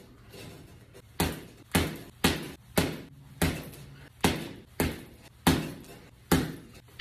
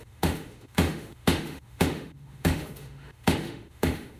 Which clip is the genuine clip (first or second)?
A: first